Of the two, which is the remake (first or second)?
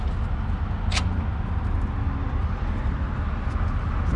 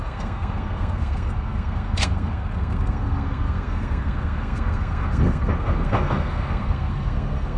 second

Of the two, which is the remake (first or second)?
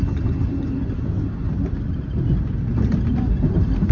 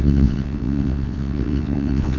second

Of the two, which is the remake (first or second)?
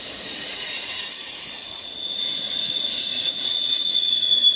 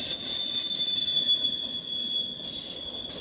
first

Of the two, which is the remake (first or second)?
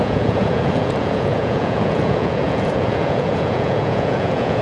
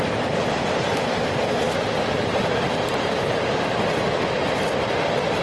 first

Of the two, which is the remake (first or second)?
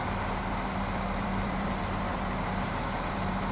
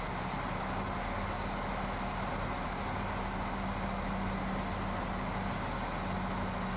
first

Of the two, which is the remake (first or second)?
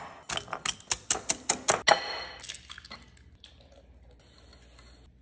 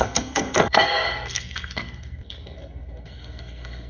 second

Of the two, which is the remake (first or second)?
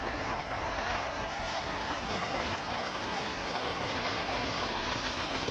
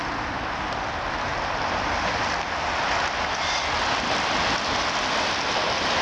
first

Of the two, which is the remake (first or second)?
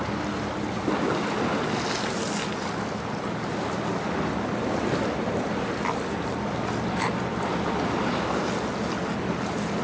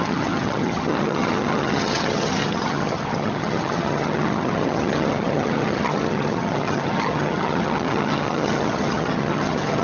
second